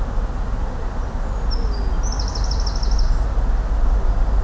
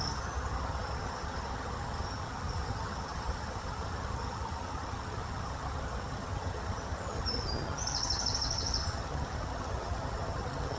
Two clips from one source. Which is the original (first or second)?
first